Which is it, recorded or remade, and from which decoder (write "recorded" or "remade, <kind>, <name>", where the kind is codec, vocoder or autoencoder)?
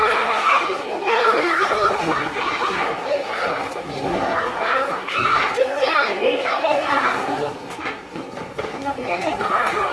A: remade, codec, SNAC